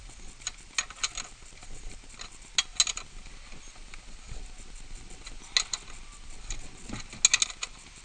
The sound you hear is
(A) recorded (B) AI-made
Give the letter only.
A